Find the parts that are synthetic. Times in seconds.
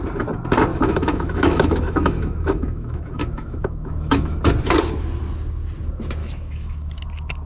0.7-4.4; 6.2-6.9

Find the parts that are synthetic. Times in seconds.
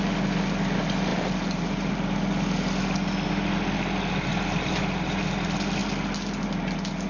1.1-1.9; 4.3-4.8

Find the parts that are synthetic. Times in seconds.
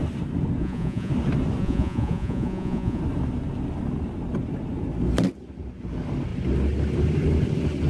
0.6-1.1; 1.6-3.0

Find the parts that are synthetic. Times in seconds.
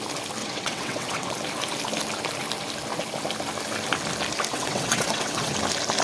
0.4-1.3; 4.5-5.5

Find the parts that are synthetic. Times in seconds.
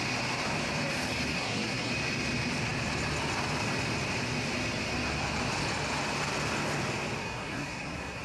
1.3-1.9; 7.2-8.2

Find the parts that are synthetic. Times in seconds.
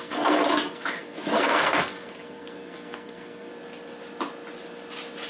0.0-3.5